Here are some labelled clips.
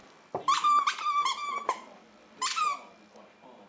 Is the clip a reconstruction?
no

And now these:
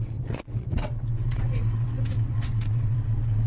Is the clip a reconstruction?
yes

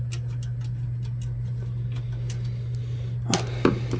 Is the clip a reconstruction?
no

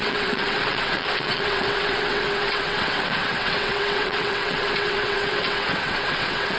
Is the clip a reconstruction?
yes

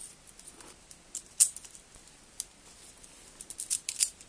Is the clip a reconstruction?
no